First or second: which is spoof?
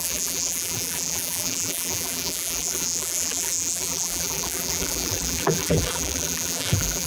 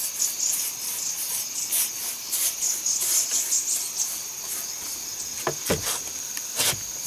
first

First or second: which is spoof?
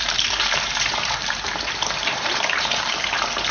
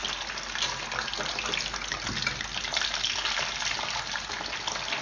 first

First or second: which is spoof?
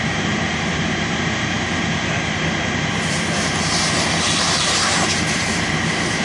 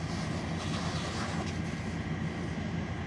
first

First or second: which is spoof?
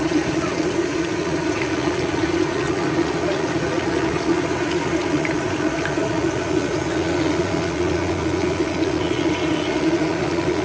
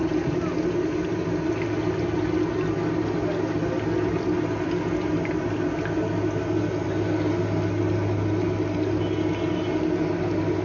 first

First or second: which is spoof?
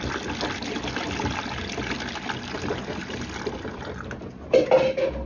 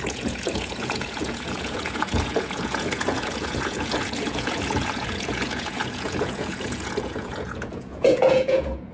second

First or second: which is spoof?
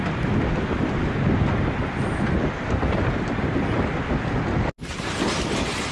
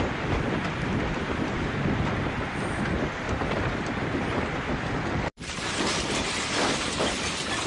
second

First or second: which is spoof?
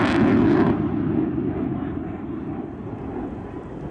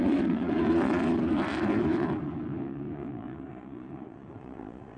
second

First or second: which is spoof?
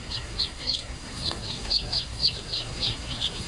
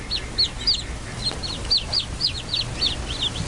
first